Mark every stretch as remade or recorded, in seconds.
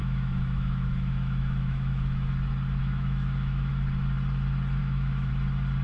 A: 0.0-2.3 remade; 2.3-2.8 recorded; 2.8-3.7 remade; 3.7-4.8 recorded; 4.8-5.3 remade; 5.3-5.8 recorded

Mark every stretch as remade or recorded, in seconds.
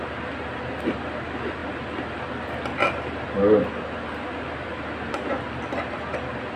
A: 0.0-6.6 recorded